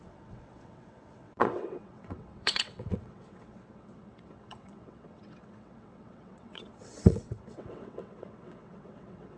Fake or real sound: fake